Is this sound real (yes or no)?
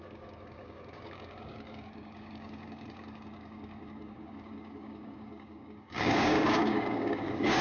no